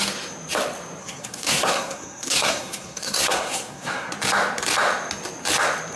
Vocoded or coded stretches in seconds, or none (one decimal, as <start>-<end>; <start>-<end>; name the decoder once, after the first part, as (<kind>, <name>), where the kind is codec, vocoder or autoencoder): 1.0-4.1 (codec, SNAC)